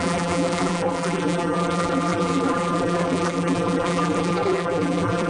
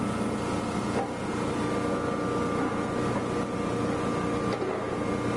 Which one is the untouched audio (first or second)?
second